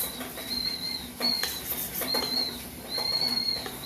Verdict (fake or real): real